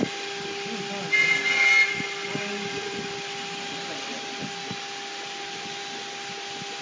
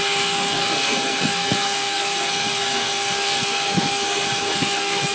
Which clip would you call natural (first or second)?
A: first